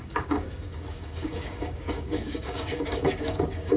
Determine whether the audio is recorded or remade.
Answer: remade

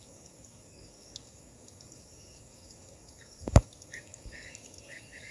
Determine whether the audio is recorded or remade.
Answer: remade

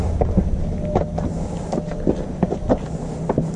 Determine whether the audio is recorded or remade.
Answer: recorded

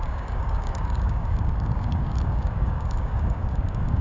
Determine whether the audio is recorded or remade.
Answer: remade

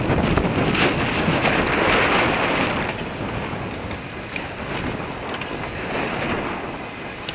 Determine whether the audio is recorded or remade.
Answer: recorded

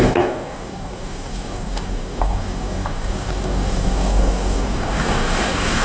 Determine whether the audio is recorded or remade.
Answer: remade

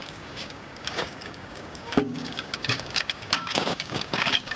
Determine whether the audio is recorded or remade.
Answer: remade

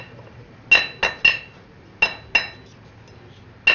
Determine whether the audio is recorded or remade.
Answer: recorded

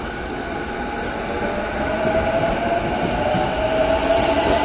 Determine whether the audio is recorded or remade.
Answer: recorded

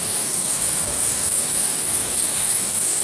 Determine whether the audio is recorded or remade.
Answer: remade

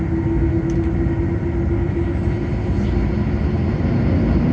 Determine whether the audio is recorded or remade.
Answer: recorded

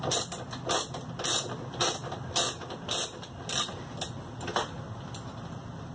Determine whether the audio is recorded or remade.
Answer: recorded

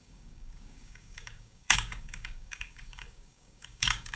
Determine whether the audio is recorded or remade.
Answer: remade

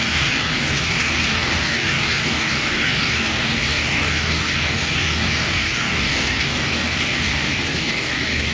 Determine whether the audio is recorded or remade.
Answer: remade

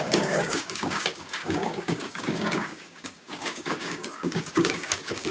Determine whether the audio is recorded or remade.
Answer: remade